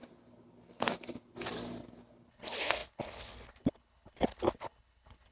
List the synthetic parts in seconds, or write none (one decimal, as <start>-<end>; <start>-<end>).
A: 2.3-5.3